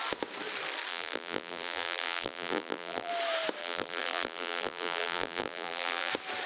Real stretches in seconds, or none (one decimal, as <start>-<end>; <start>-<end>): 0.0-0.9; 3.1-3.6; 6.1-6.5